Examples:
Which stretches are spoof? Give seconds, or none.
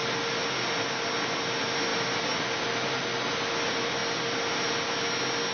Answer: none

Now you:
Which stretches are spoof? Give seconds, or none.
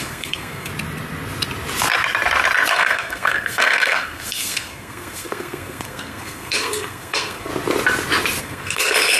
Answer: 0.0-0.7 (codec, SNAC); 2.7-7.5; 8.4-9.2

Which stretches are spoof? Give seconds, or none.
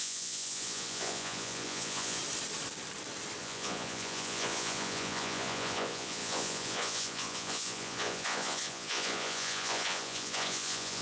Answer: 0.0-2.2 (vocoder, Vocos); 3.4-11.0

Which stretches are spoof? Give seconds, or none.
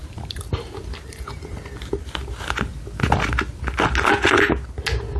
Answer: 0.0-2.3 (vocoder, BigVGAN v2)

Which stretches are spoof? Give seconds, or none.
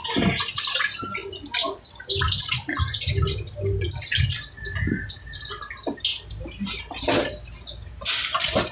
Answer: none